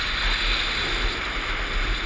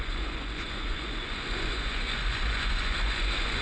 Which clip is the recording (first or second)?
first